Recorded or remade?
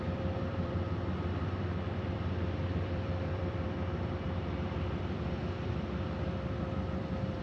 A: remade